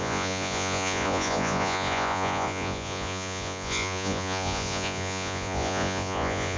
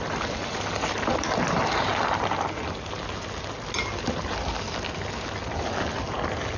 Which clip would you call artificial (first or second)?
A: first